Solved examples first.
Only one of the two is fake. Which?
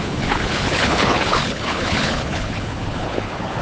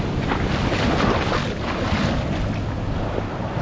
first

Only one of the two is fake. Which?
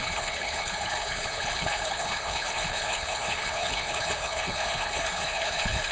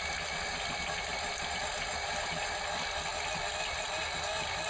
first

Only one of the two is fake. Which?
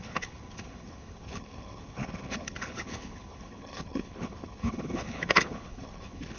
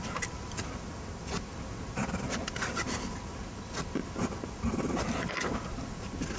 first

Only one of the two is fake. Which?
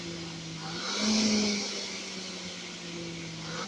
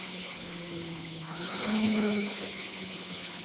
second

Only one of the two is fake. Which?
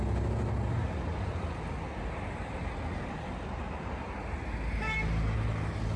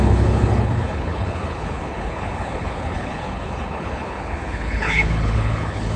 second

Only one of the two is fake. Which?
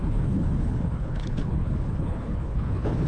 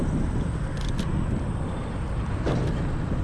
first